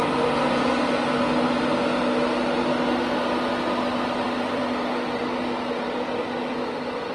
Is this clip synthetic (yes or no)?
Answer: no